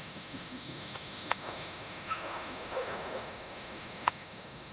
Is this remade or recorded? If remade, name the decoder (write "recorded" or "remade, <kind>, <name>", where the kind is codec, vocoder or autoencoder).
remade, autoencoder, DAC-VAE